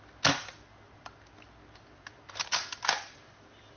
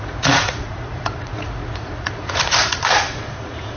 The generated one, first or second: second